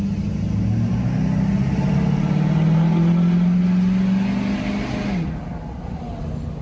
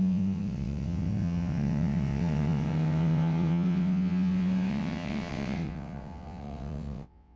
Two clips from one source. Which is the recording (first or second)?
first